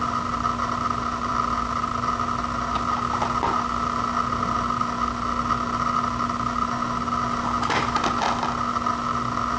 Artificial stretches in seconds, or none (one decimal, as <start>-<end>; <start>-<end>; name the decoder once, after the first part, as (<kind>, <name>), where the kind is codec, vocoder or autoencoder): none